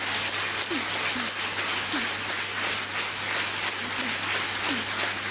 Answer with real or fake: real